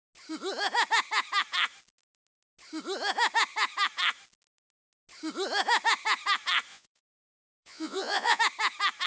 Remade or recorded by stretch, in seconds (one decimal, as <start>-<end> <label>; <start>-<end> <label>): 0.0-6.7 recorded; 6.7-8.4 remade; 8.4-9.1 recorded